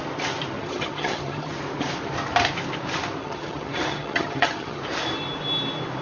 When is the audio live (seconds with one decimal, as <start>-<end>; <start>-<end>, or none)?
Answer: 0.0-0.6; 1.5-3.2; 4.8-6.0